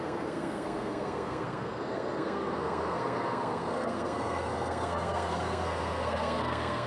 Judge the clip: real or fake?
fake